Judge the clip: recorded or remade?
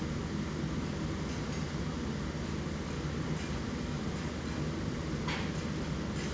recorded